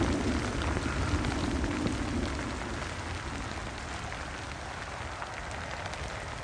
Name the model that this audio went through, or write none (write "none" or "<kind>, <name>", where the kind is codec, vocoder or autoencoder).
none